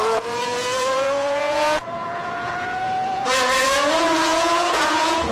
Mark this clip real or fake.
fake